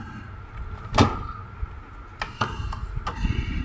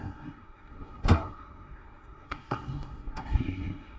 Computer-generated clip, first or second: second